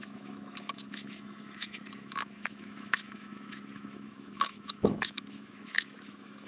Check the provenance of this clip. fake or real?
fake